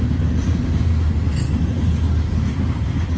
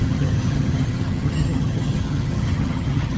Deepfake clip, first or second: second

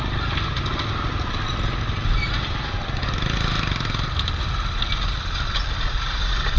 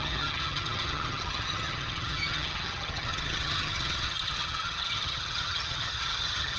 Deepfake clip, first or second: second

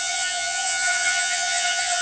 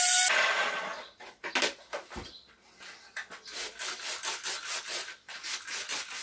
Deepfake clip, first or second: first